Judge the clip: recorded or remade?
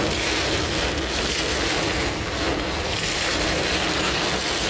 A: recorded